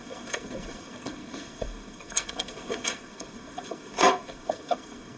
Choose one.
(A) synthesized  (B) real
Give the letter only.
A